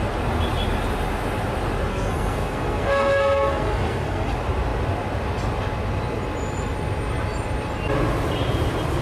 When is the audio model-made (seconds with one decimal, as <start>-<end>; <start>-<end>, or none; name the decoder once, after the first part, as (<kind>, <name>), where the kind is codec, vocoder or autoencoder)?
1.9-4.3 (codec, SNAC)